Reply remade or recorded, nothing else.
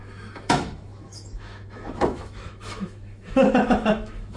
remade